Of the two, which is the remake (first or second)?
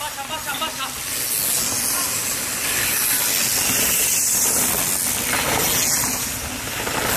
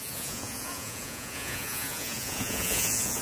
second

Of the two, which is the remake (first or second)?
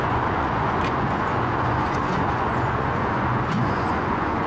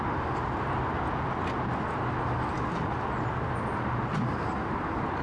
first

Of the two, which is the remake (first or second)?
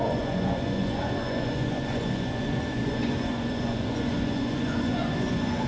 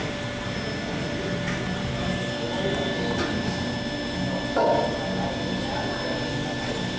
first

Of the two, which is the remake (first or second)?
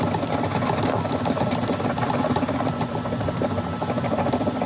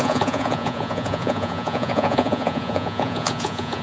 second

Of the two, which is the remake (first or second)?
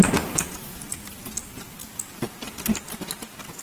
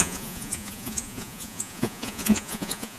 second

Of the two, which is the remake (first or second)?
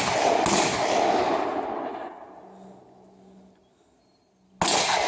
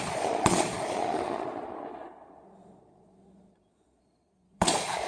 second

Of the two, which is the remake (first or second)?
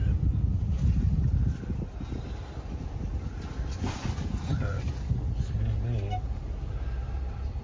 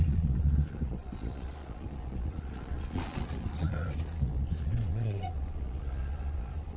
second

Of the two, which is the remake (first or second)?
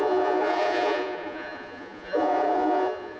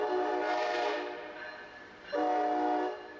first